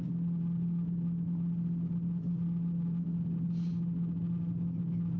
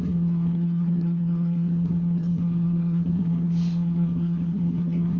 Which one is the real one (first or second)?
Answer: first